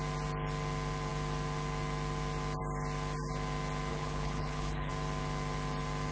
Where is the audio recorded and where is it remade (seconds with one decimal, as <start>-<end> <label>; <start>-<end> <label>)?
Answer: 0.0-3.9 recorded; 3.9-4.9 remade; 4.9-6.1 recorded